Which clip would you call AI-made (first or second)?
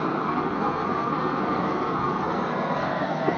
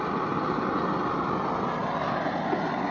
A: first